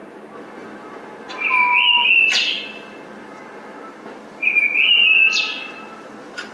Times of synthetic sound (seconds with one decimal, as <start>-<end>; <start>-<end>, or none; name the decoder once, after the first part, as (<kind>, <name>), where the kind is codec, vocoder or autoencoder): none